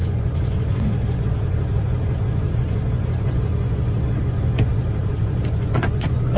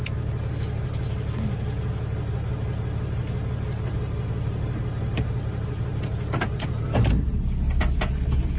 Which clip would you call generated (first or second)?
first